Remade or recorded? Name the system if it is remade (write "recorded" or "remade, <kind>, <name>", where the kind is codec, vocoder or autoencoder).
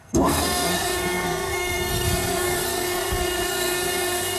remade, codec, SNAC